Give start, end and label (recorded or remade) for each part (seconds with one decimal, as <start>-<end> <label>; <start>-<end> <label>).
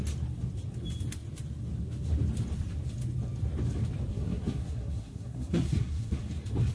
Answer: 0.0-4.1 recorded; 4.1-6.2 remade; 6.2-6.7 recorded